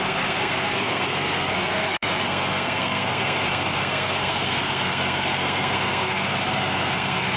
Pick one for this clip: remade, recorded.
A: remade